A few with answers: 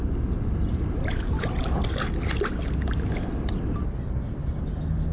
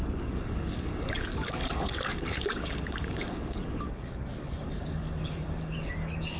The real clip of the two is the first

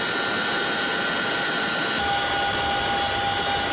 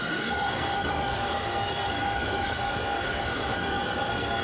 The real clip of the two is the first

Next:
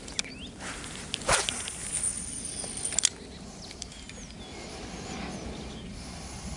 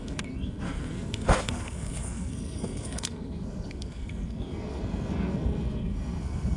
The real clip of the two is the first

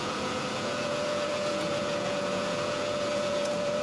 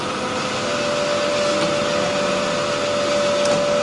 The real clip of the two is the second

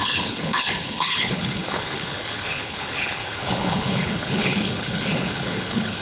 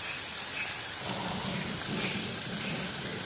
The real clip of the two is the second